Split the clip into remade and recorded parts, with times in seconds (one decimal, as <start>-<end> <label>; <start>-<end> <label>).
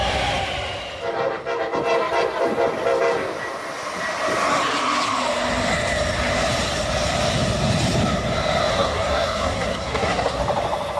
0.0-8.7 recorded; 8.7-10.4 remade; 10.4-11.0 recorded